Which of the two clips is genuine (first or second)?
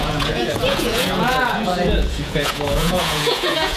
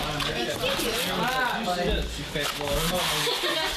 second